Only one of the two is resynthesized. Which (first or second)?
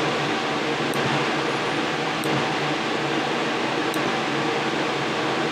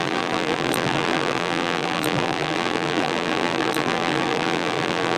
second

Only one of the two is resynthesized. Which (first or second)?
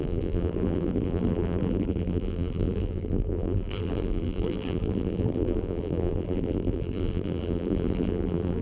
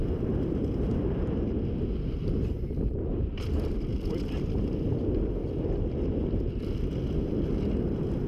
first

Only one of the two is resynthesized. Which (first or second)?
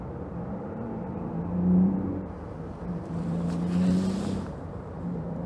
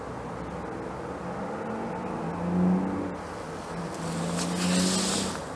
first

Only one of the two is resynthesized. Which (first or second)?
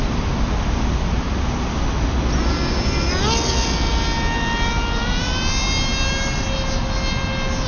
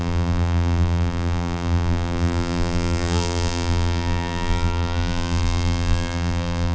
second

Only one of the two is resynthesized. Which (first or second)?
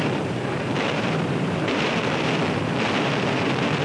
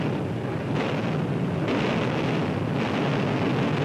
first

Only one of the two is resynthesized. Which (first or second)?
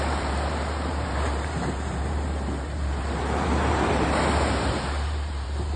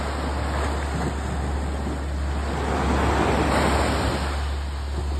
first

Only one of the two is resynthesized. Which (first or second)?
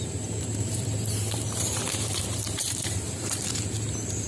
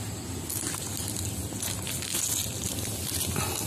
first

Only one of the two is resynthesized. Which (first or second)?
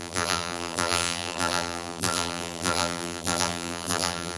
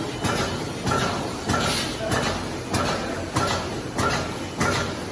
first